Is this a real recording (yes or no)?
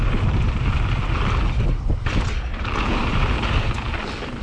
yes